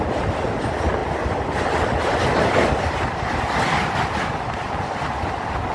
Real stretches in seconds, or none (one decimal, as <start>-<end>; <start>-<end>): 0.0-5.7